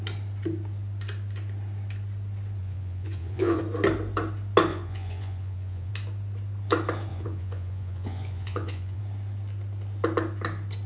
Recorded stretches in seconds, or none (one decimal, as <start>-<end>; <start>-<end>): 0.0-2.6; 3.6-4.7; 5.9-7.1; 9.0-10.9